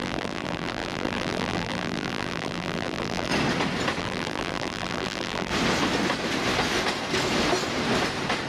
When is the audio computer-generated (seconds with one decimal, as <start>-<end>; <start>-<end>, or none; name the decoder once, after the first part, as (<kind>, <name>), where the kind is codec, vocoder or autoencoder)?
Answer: 0.0-3.3 (vocoder, BigVGAN v2); 4.0-5.5